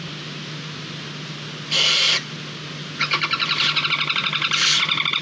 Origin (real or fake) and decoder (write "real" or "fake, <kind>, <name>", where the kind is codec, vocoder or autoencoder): real